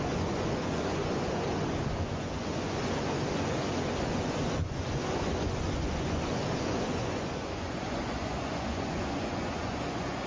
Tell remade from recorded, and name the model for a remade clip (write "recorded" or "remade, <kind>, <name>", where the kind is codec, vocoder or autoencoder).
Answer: remade, vocoder, Vocos